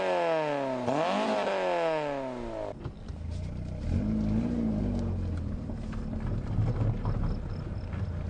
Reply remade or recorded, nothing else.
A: recorded